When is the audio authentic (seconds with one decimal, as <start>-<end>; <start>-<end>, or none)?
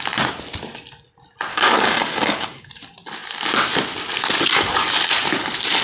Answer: 0.0-1.5; 2.7-5.8